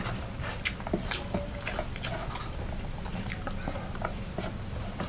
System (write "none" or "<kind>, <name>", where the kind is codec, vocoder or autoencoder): none